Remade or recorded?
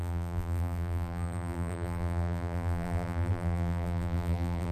remade